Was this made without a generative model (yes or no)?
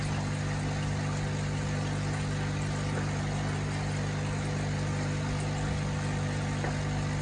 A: yes